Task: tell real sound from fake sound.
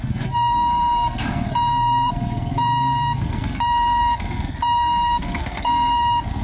fake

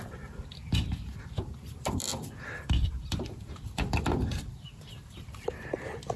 fake